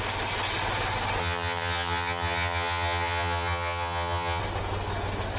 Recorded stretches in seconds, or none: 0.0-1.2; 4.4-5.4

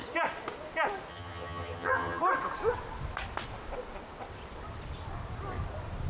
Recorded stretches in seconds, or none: 0.0-1.1; 2.2-6.1